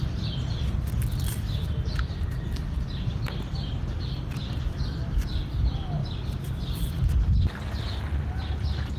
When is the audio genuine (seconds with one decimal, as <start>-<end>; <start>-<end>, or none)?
0.0-9.0